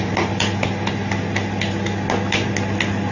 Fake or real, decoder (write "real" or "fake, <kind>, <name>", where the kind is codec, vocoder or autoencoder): real